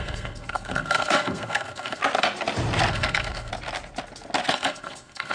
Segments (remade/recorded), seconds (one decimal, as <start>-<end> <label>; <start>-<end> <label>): 0.0-2.0 remade; 2.0-2.9 recorded; 2.9-3.5 remade; 3.5-4.5 recorded; 4.5-5.3 remade